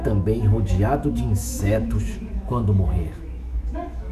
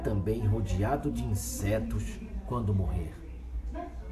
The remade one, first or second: first